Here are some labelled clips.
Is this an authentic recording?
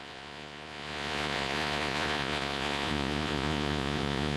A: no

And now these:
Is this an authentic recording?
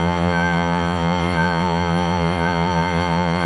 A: no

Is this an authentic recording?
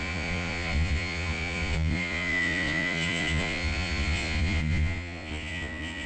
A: no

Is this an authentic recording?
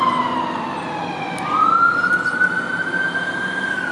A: yes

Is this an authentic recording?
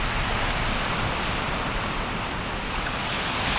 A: yes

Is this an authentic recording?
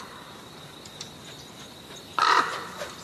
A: yes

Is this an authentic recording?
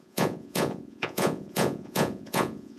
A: no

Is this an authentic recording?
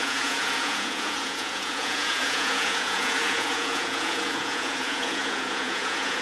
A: no